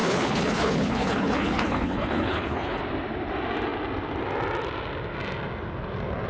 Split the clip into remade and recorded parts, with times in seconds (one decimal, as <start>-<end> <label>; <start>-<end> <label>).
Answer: 0.0-2.8 remade; 2.8-6.3 recorded